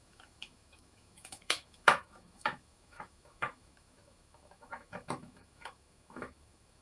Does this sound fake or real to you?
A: fake